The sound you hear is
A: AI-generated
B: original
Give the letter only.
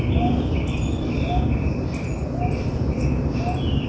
B